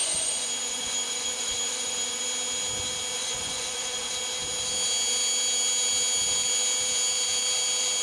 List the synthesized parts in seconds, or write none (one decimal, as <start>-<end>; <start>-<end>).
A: 0.0-2.2; 3.2-4.1